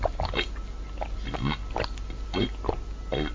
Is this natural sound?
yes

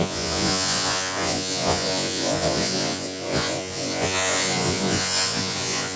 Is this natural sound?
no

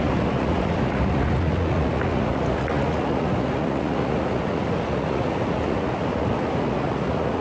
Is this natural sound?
no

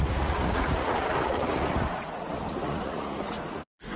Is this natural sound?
no